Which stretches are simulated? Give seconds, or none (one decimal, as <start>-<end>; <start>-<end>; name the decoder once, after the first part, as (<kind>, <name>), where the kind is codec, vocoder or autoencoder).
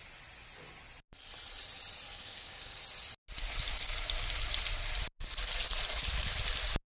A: 2.1-2.8 (codec, DAC)